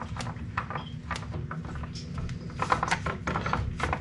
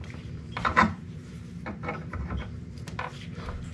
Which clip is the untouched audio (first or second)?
first